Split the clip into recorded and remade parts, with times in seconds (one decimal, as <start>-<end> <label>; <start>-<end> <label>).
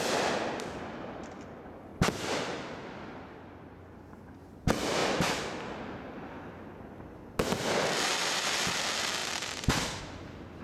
0.0-9.2 recorded; 9.2-10.0 remade; 10.0-10.6 recorded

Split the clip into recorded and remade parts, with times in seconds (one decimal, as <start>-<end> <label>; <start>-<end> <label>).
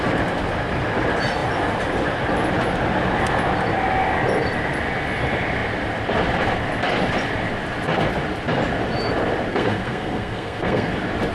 0.0-9.5 recorded; 9.5-10.9 remade; 10.9-11.3 recorded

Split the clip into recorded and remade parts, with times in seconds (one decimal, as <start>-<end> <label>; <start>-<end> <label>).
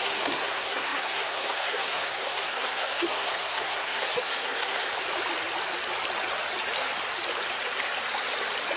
0.0-4.9 remade; 4.9-8.8 recorded